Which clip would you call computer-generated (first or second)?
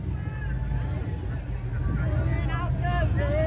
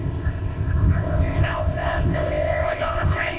second